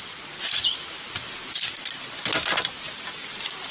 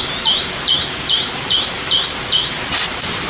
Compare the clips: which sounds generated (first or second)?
first